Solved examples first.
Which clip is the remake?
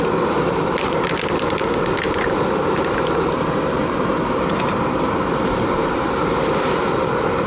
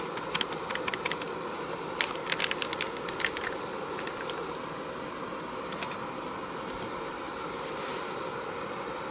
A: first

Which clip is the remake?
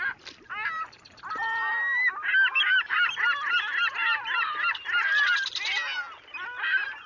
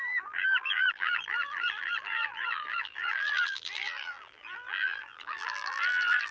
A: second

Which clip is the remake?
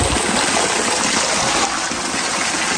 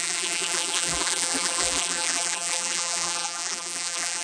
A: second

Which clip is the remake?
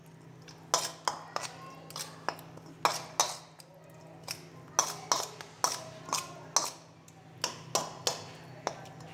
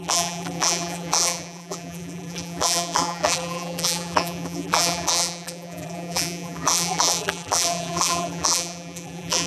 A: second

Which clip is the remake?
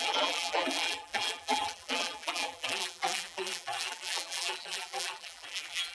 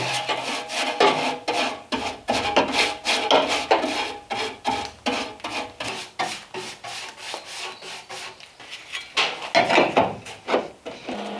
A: first